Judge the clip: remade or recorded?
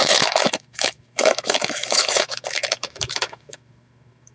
remade